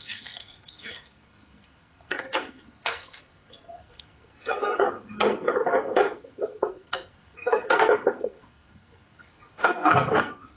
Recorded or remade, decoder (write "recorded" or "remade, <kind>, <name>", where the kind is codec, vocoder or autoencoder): remade, codec, SNAC